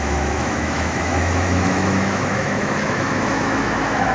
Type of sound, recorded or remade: remade